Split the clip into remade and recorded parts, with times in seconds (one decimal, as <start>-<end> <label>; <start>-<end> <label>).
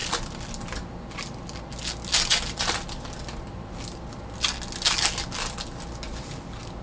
0.0-6.8 recorded